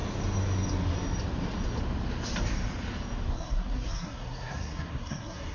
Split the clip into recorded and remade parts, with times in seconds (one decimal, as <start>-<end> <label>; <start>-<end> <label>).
0.0-3.3 recorded; 3.3-5.5 remade